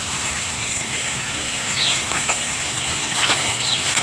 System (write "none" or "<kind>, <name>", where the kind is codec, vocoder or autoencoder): codec, SNAC